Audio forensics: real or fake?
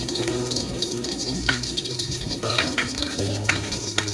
fake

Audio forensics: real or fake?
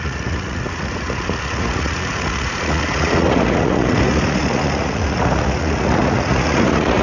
fake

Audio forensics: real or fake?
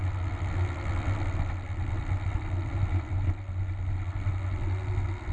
real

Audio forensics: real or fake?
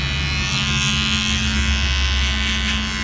real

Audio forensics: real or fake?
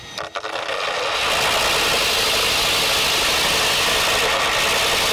real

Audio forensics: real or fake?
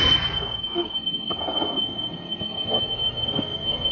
fake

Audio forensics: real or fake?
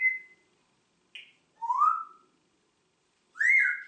real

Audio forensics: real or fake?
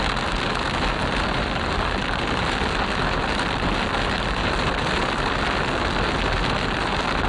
real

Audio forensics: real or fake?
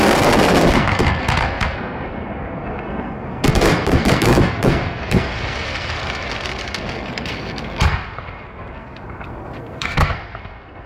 fake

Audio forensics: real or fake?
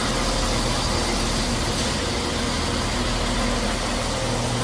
real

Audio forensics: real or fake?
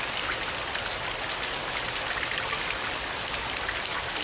real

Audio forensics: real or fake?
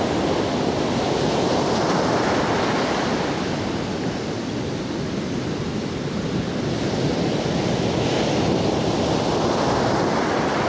real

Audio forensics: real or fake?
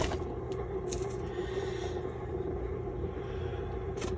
real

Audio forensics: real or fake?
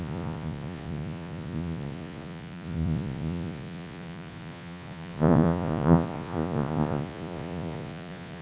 fake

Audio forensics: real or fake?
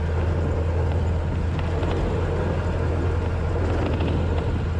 real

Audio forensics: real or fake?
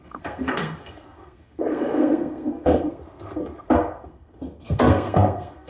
fake